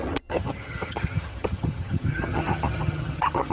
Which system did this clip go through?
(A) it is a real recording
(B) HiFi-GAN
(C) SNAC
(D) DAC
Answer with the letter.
B